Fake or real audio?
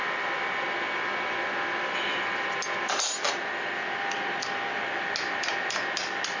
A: real